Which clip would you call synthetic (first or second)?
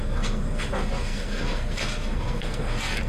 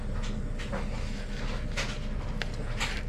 first